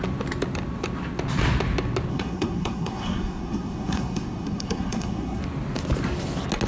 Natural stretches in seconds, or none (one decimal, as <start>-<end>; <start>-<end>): 0.0-2.1; 5.4-6.7